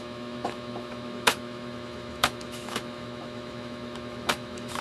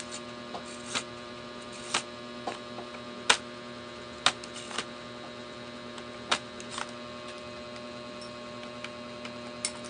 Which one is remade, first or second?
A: first